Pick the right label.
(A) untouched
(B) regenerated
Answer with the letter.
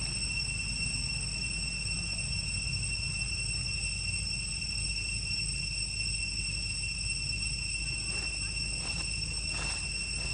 A